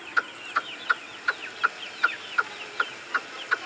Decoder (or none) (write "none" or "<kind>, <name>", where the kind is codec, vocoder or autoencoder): none